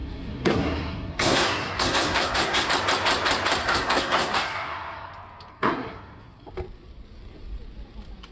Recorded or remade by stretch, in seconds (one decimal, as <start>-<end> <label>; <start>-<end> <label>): 0.0-2.7 remade; 2.7-3.6 recorded; 3.6-5.1 remade; 5.1-5.5 recorded; 5.5-6.5 remade; 6.5-8.3 recorded